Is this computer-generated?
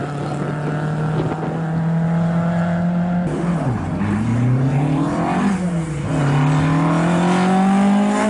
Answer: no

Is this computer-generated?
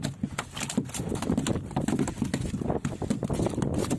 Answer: no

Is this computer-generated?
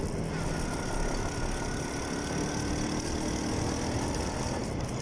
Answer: no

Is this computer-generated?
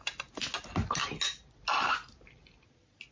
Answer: no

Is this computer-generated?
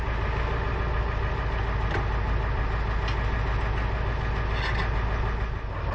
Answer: no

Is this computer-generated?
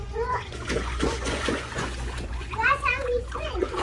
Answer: yes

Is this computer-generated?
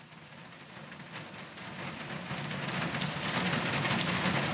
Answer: no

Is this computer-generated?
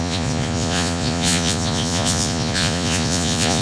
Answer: yes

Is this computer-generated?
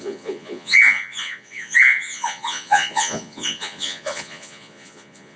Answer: yes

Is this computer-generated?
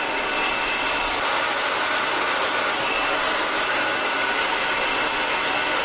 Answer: no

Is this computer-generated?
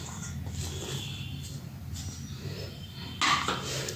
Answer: no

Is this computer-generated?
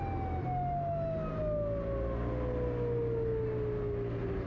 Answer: no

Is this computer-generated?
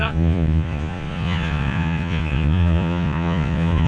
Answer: yes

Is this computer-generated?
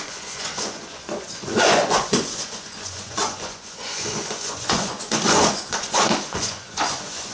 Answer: yes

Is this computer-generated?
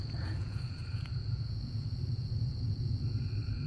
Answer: yes